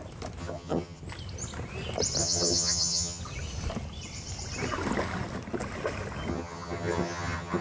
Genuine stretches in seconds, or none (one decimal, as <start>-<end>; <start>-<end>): 0.0-0.4; 1.0-2.2; 3.2-6.3